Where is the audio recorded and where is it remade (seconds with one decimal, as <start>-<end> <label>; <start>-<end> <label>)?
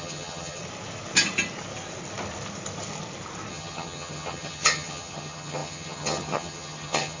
0.0-0.6 remade; 0.6-3.5 recorded; 3.5-7.2 remade